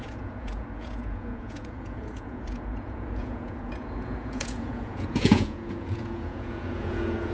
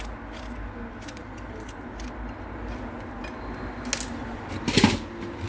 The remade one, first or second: first